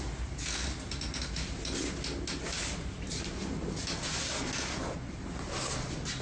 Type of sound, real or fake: real